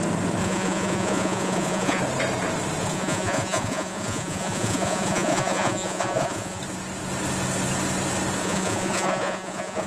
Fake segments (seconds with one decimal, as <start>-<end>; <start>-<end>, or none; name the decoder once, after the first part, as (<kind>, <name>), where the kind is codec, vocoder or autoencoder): 0.4-2.0 (vocoder, Vocos); 2.8-6.6; 8.4-9.9